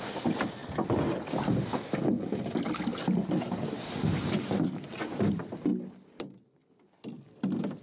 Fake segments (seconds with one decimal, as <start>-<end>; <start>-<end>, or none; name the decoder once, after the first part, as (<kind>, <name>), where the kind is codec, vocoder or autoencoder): none